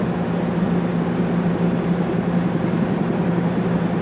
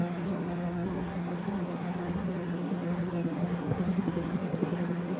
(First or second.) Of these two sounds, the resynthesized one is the second